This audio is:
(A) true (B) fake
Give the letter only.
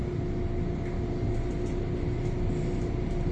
A